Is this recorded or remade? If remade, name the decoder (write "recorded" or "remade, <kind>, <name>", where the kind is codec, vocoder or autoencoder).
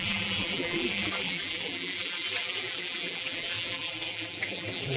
remade, vocoder, BigVGAN v2